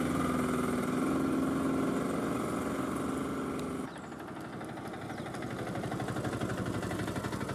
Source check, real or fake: real